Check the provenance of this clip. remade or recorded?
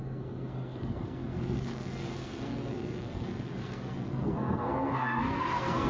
remade